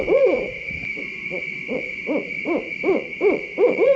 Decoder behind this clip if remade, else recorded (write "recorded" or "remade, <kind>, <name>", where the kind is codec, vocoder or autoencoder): remade, vocoder, Vocos